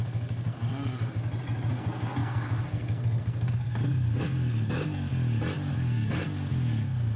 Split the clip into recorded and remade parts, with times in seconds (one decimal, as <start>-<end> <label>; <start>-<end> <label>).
0.0-1.2 remade; 1.2-1.7 recorded; 1.7-5.1 remade; 5.1-5.7 recorded; 5.7-7.2 remade